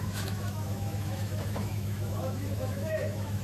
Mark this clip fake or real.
fake